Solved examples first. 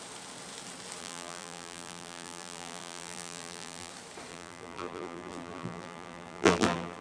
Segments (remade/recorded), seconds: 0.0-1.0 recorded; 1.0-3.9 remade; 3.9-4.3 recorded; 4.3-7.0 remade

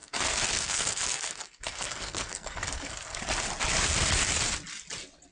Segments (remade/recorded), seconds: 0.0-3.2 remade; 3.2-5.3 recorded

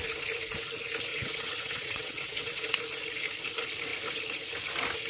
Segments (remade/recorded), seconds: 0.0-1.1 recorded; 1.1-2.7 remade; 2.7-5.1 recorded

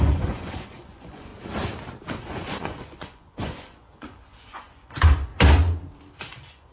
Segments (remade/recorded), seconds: 0.0-1.3 remade; 1.3-2.0 recorded; 2.0-5.3 remade; 5.3-6.2 recorded; 6.2-6.7 remade

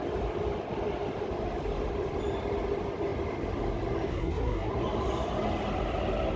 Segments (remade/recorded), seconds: 0.0-4.1 recorded; 4.1-4.7 remade; 4.7-6.4 recorded

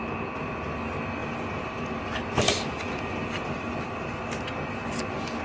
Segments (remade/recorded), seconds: 0.0-1.2 recorded; 1.2-2.1 remade; 2.1-5.4 recorded

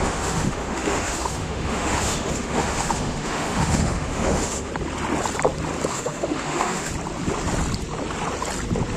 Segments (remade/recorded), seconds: 0.0-4.7 remade; 4.7-5.9 recorded; 5.9-6.9 remade; 6.9-9.0 recorded